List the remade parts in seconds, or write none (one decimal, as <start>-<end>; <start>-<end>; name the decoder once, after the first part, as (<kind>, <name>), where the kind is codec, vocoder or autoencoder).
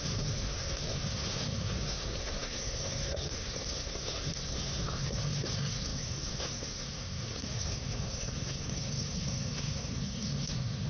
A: 0.0-10.9 (codec, SNAC)